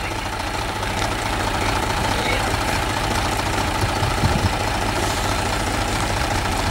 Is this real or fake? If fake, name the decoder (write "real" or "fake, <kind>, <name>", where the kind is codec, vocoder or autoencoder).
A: fake, vocoder, BigVGAN v2